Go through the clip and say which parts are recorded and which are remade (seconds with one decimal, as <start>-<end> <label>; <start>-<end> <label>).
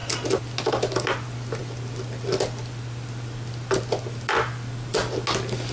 0.0-5.7 recorded